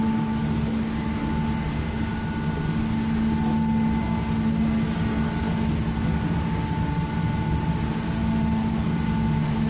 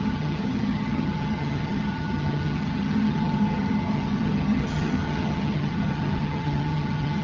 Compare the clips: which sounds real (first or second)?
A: first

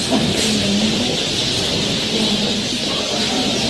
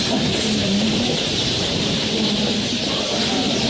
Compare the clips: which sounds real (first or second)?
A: first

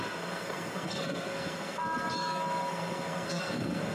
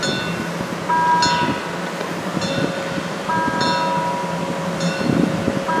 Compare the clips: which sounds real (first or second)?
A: second